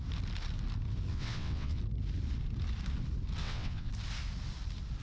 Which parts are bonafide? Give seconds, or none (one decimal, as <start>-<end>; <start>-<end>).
0.0-1.1; 1.8-3.4; 3.9-5.0